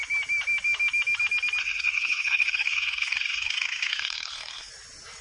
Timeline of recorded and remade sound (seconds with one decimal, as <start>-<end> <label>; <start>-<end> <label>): 0.0-1.6 recorded; 1.6-4.7 remade; 4.7-5.2 recorded